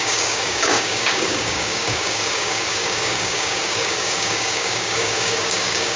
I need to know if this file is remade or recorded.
remade